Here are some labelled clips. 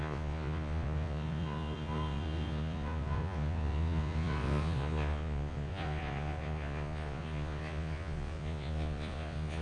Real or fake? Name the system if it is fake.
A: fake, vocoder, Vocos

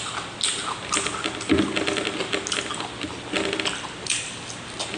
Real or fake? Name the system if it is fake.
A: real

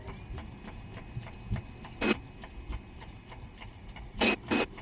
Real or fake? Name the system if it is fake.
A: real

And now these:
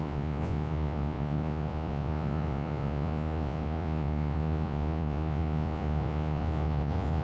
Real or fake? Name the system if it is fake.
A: fake, vocoder, Vocos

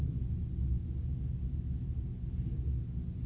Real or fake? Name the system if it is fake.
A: real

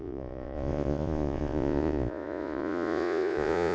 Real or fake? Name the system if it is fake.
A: fake, vocoder, Vocos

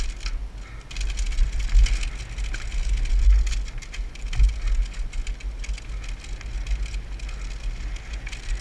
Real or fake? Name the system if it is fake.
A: real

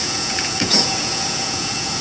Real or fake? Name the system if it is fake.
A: fake, vocoder, Vocos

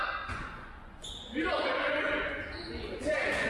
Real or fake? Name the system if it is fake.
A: fake, vocoder, Vocos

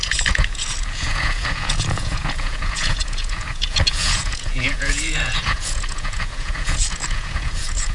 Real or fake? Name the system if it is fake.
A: fake, vocoder, Vocos